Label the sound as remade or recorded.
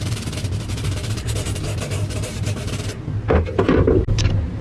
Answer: remade